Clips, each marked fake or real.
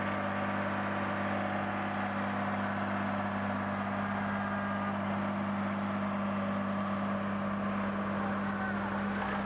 real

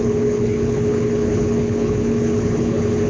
fake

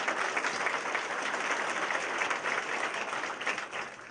real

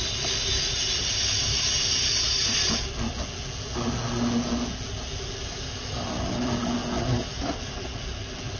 real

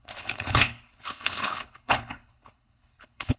fake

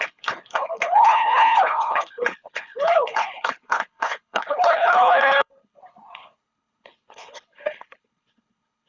fake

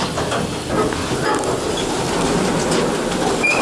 real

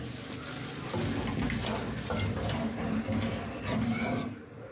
real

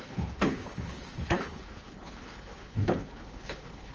fake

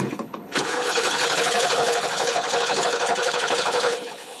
fake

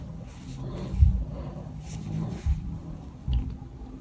real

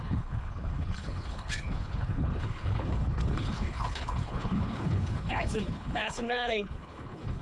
fake